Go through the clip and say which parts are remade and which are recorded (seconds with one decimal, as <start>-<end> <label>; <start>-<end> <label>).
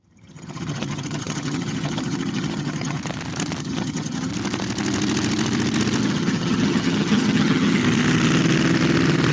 0.0-3.0 remade; 3.0-3.6 recorded; 3.6-4.3 remade; 4.3-6.0 recorded; 6.0-7.8 remade; 7.8-9.3 recorded